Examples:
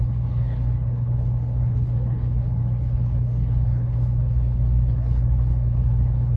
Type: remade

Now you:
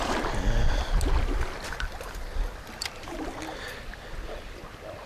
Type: recorded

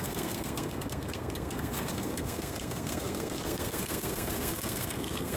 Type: remade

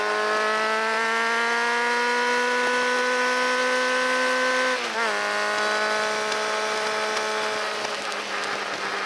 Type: recorded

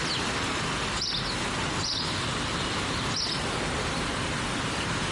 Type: recorded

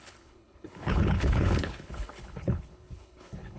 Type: remade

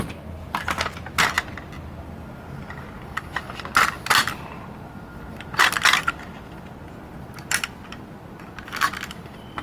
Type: recorded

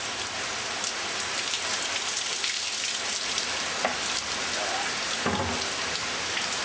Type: recorded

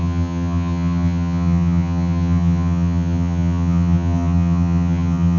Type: remade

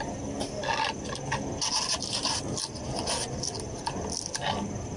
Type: recorded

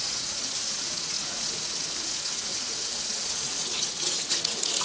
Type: remade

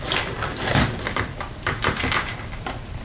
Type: remade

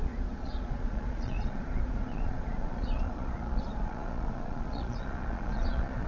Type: remade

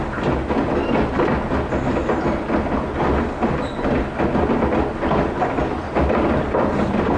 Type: recorded